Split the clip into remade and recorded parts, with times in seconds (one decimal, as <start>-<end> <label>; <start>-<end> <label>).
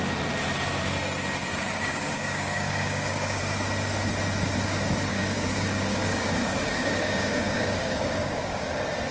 0.0-1.5 recorded; 1.5-3.4 remade; 3.4-5.1 recorded; 5.1-8.7 remade; 8.7-9.1 recorded